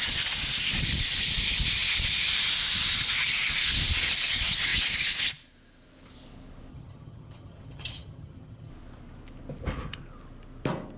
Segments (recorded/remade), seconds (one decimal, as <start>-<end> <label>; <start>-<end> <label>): 0.0-6.7 recorded; 6.7-8.7 remade; 8.7-11.0 recorded